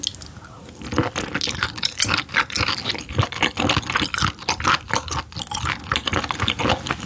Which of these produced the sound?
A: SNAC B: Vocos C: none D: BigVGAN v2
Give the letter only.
C